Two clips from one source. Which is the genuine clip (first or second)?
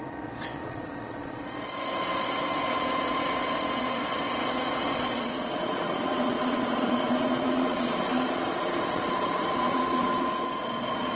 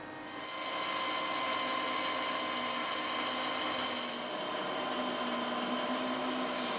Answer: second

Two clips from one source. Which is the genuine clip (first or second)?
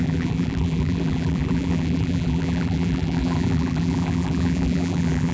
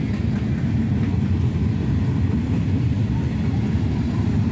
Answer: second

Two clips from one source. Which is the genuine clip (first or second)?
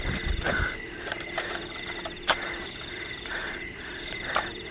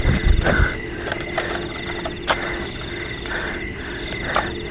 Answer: second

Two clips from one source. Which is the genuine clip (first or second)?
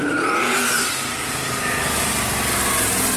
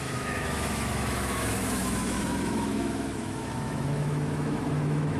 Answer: first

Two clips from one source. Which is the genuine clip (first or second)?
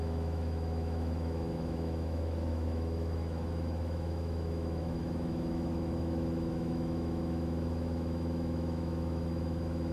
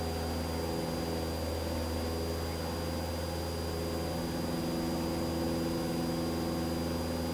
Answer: second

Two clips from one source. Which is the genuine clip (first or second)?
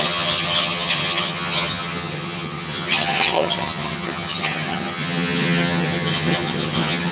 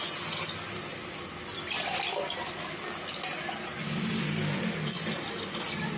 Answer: second